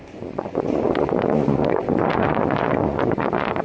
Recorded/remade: remade